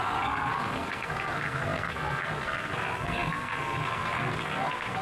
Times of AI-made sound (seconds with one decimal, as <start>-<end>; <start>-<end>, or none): 0.0-5.0